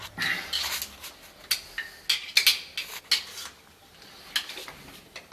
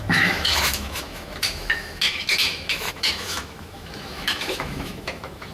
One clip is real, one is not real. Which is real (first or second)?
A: first